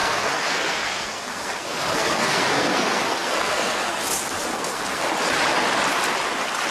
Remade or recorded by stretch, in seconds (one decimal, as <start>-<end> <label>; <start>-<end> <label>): 0.0-4.0 remade; 4.0-4.5 recorded; 4.5-5.1 remade; 5.1-6.7 recorded